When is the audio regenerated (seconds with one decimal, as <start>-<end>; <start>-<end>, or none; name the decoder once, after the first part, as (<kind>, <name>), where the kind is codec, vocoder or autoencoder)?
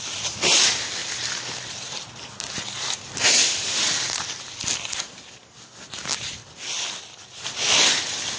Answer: none